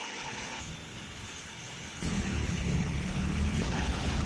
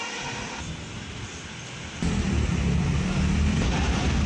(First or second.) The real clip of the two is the second